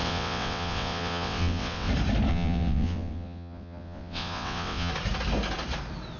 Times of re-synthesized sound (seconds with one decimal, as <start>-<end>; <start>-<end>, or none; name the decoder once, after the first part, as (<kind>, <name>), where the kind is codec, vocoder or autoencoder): 0.0-1.9 (vocoder, WaveNeXt); 2.3-4.9